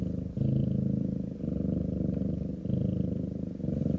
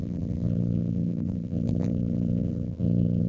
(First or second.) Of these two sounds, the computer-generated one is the second